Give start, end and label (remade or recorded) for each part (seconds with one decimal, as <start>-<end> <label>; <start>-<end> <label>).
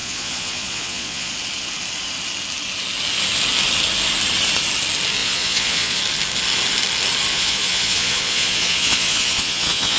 0.0-1.3 remade; 1.3-5.2 recorded; 5.2-6.0 remade; 6.0-7.3 recorded; 7.3-10.0 remade